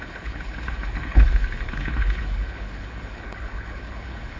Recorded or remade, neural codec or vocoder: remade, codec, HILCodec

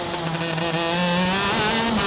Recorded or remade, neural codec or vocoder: recorded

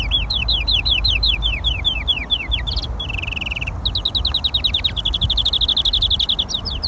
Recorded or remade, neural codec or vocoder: recorded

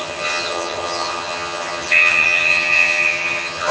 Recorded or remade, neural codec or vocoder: remade, vocoder, HiFi-GAN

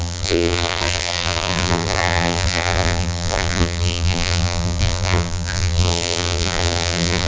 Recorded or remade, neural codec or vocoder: remade, vocoder, BigVGAN v2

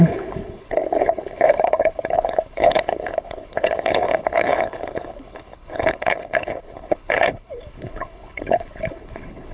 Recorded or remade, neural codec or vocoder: remade, codec, HILCodec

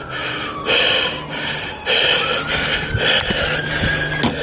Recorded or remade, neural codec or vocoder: recorded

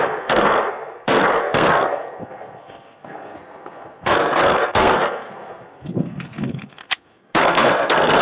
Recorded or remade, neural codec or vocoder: remade, codec, SNAC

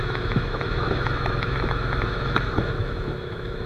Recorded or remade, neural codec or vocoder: remade, autoencoder, DAC-VAE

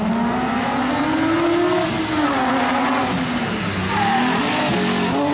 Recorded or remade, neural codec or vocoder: recorded